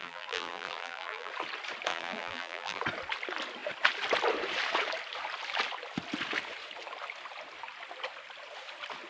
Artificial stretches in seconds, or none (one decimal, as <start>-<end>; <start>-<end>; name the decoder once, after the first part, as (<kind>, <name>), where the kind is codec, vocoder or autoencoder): 0.0-1.3 (vocoder, BigVGAN v2); 1.9-2.8